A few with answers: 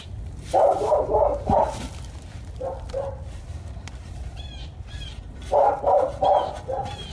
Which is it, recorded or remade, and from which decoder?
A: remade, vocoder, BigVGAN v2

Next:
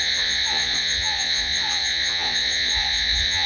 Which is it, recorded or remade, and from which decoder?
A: remade, vocoder, Vocos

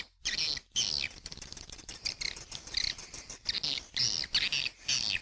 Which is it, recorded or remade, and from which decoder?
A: recorded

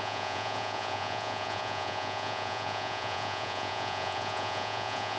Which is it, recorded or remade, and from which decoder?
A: remade, vocoder, Vocos